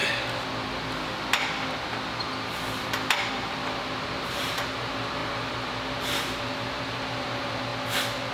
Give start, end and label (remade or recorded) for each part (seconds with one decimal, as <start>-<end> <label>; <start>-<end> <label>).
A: 0.0-3.3 recorded; 3.3-7.7 remade; 7.7-8.3 recorded